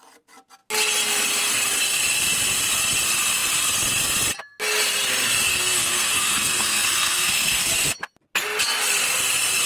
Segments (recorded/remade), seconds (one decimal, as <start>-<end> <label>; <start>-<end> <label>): 0.0-5.5 recorded; 5.5-7.7 remade; 7.7-9.7 recorded